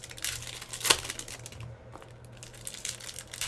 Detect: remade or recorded recorded